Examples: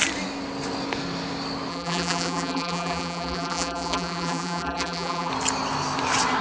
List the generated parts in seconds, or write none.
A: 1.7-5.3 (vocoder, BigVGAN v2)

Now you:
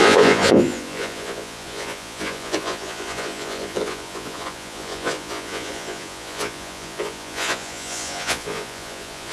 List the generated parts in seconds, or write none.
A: 0.0-9.3 (vocoder, Vocos)

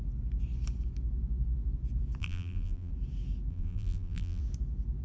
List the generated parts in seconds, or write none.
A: 2.2-2.9 (vocoder, BigVGAN v2); 3.5-4.4

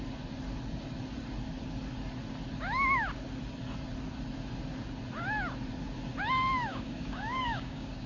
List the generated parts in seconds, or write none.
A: 6.7-8.1 (codec, DAC)

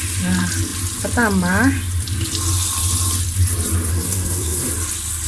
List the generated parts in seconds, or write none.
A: 3.9-4.7 (codec, SNAC)

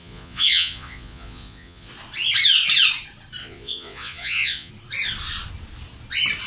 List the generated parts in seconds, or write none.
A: 0.0-1.9 (vocoder, Vocos); 3.4-4.7

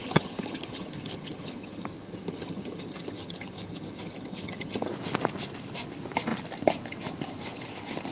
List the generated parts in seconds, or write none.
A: 0.0-4.9 (vocoder, HiFi-GAN)

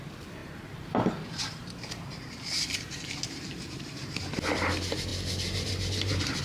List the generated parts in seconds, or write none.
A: 0.4-4.2 (vocoder, BigVGAN v2)